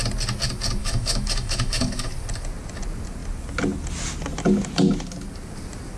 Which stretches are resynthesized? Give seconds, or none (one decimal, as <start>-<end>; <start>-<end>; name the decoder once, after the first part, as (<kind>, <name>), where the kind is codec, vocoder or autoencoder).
0.8-2.1 (autoencoder, DAC-VAE)